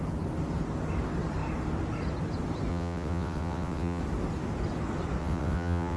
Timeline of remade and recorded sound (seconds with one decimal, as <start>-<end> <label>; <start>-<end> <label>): 0.0-2.7 recorded; 2.7-4.0 remade; 4.0-5.2 recorded; 5.2-6.0 remade